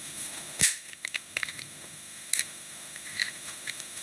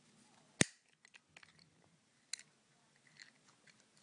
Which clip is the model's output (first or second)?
first